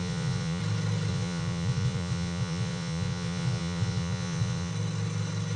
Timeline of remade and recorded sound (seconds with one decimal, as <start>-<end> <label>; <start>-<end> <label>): 0.0-0.6 remade; 0.6-1.1 recorded; 1.1-4.7 remade; 4.7-5.6 recorded